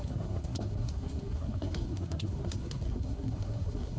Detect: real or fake fake